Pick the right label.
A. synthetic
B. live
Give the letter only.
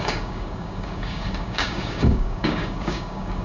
A